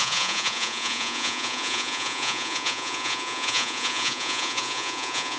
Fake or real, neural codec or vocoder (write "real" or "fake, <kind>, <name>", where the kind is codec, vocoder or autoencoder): fake, vocoder, Vocos